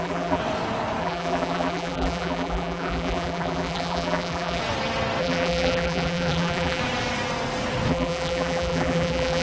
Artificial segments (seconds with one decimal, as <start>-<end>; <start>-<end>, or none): 0.0-0.4; 1.0-4.6; 5.2-6.8; 7.9-9.4